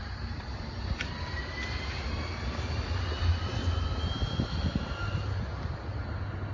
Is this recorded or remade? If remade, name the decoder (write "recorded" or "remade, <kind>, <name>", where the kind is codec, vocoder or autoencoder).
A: recorded